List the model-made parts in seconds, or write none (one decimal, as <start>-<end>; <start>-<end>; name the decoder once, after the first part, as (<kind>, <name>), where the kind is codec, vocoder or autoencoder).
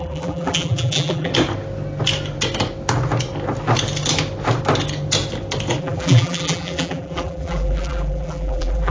0.0-1.3 (vocoder, BigVGAN v2); 5.8-8.9